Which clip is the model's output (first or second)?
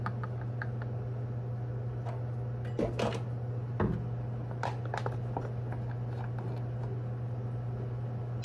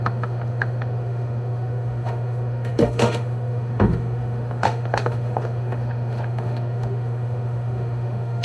second